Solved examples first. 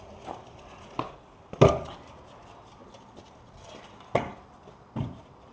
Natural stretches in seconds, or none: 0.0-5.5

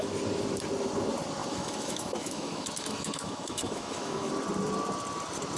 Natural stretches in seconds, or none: 0.0-1.4; 4.3-5.6

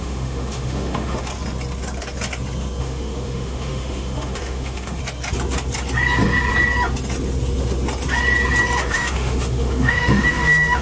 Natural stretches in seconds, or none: 1.3-2.8; 5.0-8.9

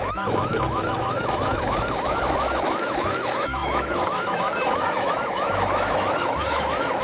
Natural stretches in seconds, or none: none

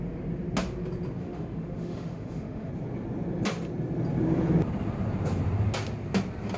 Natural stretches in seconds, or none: 0.0-1.2; 2.7-6.6

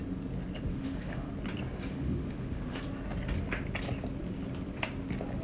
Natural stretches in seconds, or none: 0.0-0.7; 1.3-1.9; 2.8-5.4

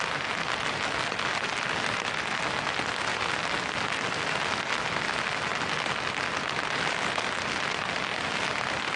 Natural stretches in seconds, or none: 0.0-9.0

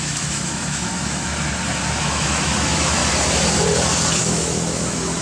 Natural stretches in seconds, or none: 1.3-2.0; 3.0-4.2